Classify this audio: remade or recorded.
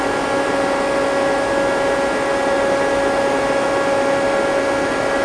recorded